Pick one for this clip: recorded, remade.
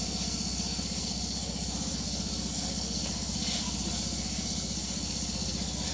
remade